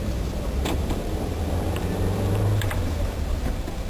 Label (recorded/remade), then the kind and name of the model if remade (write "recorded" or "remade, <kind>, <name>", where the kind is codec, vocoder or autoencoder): remade, vocoder, BigVGAN v2